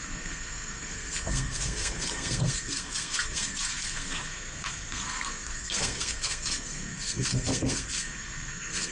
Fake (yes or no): yes